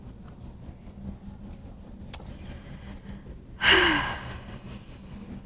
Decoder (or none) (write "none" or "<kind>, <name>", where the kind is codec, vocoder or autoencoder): none